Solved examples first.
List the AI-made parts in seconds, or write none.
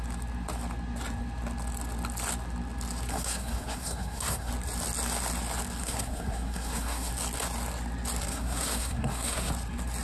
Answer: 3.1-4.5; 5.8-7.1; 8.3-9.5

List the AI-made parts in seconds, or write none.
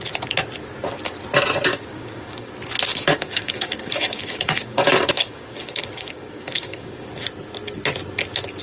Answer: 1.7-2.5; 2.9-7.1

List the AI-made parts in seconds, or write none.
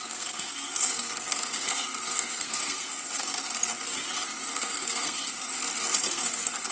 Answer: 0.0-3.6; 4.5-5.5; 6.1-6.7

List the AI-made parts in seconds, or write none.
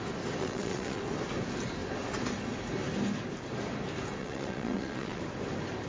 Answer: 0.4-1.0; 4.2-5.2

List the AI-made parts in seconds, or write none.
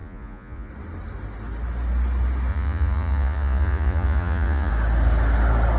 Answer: 0.0-0.7; 2.5-4.7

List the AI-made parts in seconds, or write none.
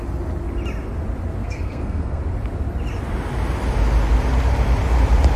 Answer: 1.4-2.2